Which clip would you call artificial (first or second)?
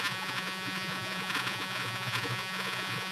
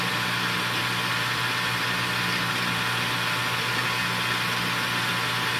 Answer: first